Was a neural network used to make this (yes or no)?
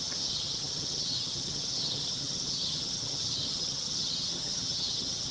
yes